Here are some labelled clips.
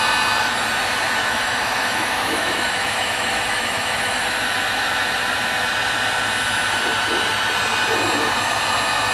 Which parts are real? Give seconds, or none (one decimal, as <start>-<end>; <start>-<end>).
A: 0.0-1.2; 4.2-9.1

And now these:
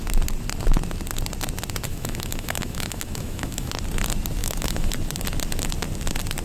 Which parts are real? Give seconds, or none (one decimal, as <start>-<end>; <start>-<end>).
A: 0.0-1.9; 3.7-4.4; 4.9-6.4

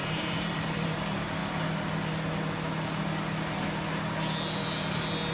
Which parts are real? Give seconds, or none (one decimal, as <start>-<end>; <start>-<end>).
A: 0.9-5.3

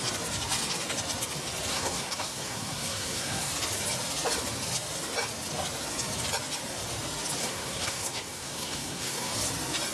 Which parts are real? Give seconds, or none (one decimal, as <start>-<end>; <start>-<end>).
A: 0.0-1.7; 3.5-7.4; 9.3-9.9

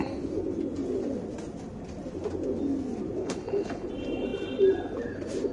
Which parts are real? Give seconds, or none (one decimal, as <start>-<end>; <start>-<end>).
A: 0.0-3.2; 3.9-5.5